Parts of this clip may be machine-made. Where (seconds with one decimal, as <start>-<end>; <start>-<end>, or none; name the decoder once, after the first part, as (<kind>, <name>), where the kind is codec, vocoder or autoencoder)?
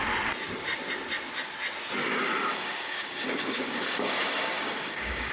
2.0-5.3 (codec, DAC)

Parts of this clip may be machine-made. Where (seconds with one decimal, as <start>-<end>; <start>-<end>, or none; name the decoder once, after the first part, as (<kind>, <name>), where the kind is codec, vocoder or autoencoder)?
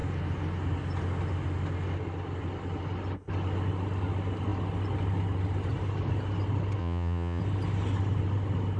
6.8-7.4 (vocoder, Vocos)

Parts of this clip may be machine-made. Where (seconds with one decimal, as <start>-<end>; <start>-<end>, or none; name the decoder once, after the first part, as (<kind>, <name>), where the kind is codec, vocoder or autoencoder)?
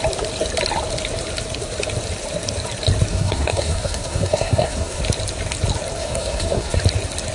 3.1-5.0 (codec, SNAC); 6.0-6.8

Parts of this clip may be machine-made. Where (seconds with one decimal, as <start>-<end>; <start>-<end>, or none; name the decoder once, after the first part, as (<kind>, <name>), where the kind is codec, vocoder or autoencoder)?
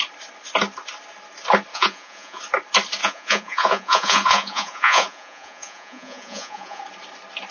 1.7-2.4 (vocoder, Vocos); 3.0-6.8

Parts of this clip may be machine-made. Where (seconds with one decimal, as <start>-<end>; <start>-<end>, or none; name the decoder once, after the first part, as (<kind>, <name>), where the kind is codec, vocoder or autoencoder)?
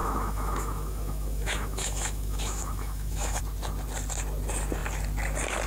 0.0-3.4 (autoencoder, DAC-VAE)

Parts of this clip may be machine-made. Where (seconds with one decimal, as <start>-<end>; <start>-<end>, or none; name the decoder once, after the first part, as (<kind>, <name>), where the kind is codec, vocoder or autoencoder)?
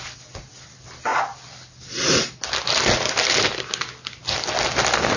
none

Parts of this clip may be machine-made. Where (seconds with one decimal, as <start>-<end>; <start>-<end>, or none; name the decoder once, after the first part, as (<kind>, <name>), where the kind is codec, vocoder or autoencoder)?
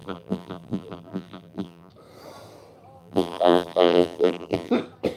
0.0-1.9 (vocoder, BigVGAN v2); 3.0-4.7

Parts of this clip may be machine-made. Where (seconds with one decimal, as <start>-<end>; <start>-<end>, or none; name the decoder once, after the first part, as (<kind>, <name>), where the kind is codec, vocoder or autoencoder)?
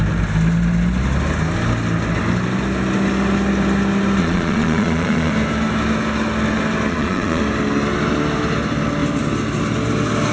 4.2-5.3 (vocoder, Vocos); 6.9-7.4